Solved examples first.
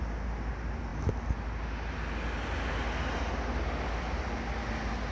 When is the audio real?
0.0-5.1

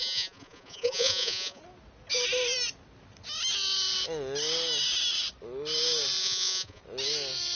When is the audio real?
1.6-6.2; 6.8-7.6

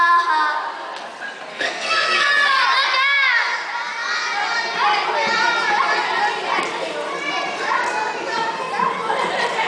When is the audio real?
0.0-1.5; 2.3-9.7